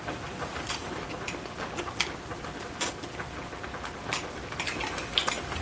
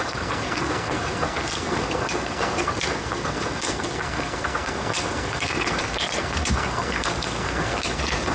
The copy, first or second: second